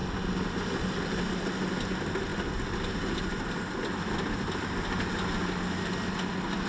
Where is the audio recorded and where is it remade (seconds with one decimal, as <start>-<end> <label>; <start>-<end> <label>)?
0.0-6.7 recorded